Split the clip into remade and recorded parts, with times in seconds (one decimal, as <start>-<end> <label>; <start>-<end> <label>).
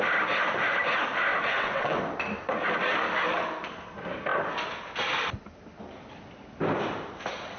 0.0-1.3 recorded; 1.3-2.0 remade; 2.0-7.6 recorded